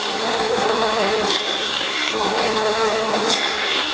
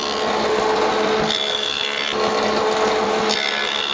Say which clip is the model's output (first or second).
first